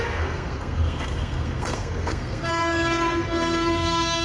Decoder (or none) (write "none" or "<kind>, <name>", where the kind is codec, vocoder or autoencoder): codec, SNAC